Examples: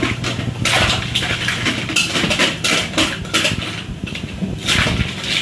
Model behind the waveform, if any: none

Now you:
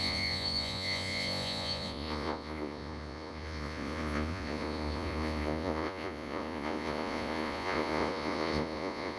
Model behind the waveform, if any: vocoder, Vocos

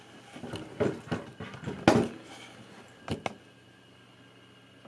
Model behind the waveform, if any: none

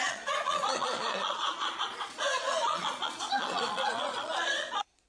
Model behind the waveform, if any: vocoder, Vocos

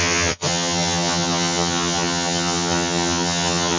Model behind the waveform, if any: vocoder, HiFi-GAN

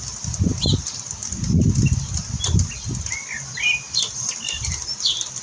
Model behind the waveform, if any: none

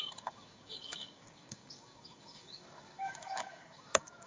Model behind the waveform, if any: codec, DAC